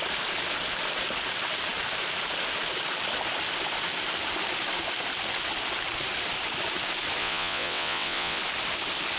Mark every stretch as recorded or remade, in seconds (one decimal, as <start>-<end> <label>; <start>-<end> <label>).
0.0-7.2 recorded; 7.2-8.4 remade; 8.4-9.2 recorded